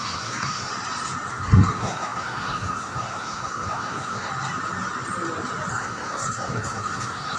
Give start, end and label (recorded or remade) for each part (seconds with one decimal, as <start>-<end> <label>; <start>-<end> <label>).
0.0-0.7 remade; 0.7-1.3 recorded; 1.3-4.3 remade; 4.3-5.7 recorded; 5.7-7.4 remade